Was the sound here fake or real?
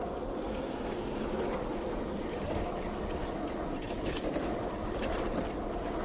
real